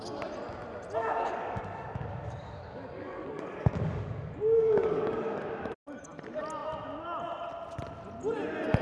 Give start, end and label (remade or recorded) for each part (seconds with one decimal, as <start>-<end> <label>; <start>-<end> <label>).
0.0-1.0 recorded; 1.0-5.4 remade; 5.4-8.8 recorded